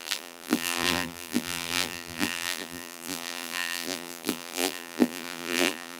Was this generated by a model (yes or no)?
yes